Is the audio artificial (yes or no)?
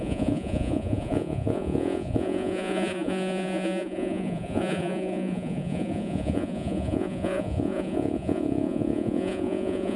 yes